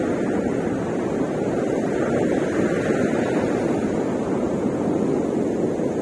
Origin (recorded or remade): recorded